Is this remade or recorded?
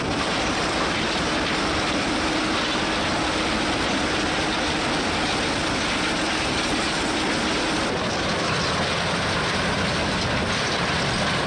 recorded